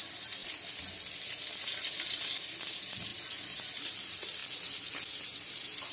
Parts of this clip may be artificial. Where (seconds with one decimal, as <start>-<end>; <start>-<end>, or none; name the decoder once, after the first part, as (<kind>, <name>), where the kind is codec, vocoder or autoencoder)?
none